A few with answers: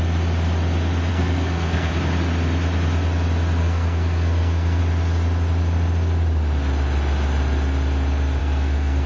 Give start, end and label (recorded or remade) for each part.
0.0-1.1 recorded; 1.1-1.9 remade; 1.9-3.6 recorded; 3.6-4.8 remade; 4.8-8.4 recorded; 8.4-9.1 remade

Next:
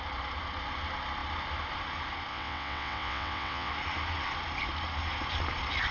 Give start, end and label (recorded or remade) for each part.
0.0-2.3 recorded; 2.3-3.7 remade; 3.7-5.9 recorded

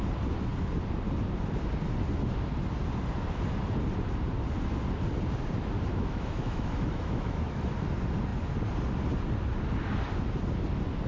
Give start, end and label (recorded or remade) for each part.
0.0-5.9 recorded; 5.9-7.6 remade; 7.6-11.1 recorded